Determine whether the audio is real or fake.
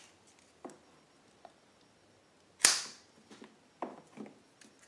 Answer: real